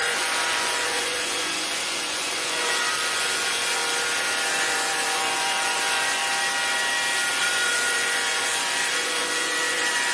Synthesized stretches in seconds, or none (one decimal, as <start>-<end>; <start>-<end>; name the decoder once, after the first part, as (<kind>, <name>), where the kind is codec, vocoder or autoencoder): 0.0-3.8 (vocoder, Vocos); 4.5-6.2; 7.4-10.1